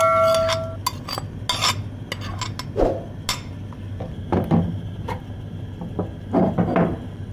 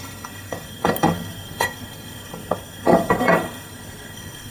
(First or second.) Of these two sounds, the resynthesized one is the second